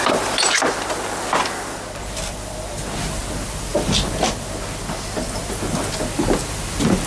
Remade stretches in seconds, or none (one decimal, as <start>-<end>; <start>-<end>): none